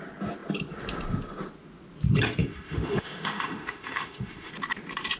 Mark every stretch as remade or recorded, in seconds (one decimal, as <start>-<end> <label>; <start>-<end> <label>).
0.0-2.4 recorded; 2.4-4.5 remade; 4.5-5.2 recorded